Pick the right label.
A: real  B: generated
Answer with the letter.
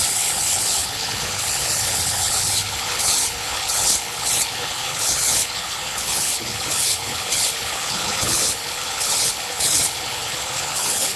B